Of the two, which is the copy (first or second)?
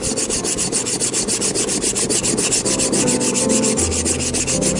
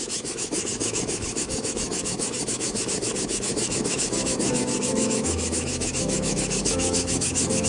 second